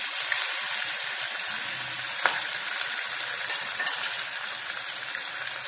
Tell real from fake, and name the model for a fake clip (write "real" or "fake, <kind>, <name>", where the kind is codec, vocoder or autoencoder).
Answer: real